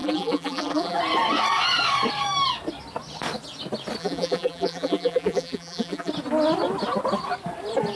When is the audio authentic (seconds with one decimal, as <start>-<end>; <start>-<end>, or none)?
1.0-4.0; 6.1-8.0